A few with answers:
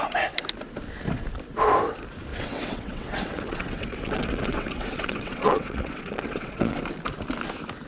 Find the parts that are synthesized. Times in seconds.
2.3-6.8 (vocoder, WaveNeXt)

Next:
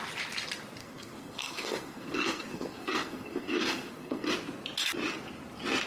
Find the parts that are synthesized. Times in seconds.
0.8-4.3 (codec, SNAC)